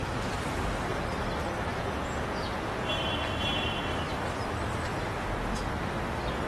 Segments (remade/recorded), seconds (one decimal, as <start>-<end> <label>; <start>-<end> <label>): 0.0-1.7 recorded; 1.7-2.9 remade; 2.9-4.9 recorded; 4.9-5.7 remade; 5.7-6.5 recorded